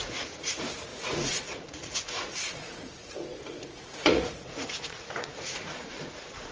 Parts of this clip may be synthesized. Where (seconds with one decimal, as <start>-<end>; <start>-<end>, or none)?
0.0-6.5